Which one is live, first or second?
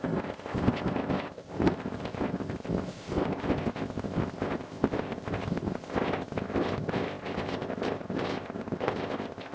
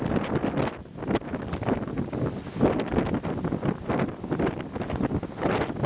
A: second